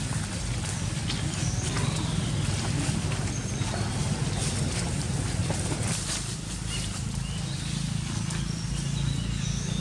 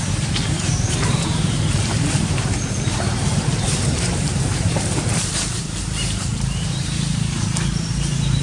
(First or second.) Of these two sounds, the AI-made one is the second